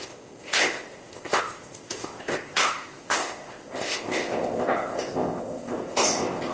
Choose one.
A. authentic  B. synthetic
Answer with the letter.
B